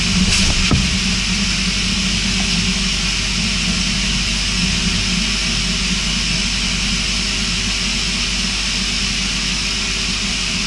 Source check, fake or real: real